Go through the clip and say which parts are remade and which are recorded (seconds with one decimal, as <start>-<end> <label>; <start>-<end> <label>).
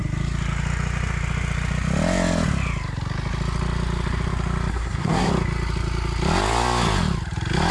0.0-4.7 recorded; 4.7-5.3 remade; 5.3-7.7 recorded